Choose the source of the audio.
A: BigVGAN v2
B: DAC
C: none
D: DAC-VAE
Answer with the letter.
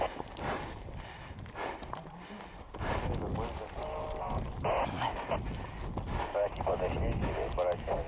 C